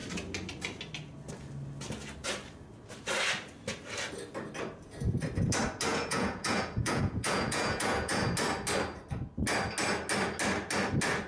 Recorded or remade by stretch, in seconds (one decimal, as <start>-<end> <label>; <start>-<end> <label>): 0.0-5.9 recorded; 5.9-8.2 remade; 8.2-11.3 recorded